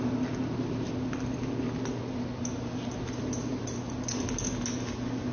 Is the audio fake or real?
real